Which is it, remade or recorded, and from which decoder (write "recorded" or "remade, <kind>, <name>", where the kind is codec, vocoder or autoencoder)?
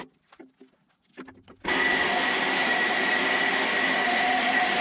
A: recorded